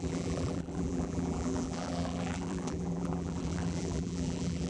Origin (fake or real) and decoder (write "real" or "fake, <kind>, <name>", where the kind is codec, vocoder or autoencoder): fake, vocoder, BigVGAN v2